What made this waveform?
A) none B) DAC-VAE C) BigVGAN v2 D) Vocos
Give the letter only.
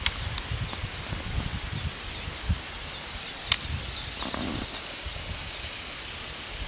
A